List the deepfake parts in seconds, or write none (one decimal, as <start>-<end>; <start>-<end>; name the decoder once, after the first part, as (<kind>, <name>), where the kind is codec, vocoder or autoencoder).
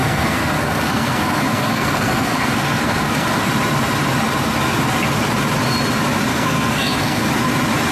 0.0-3.5 (codec, SNAC); 6.3-7.3